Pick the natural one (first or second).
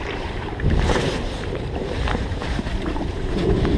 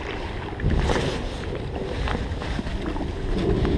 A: second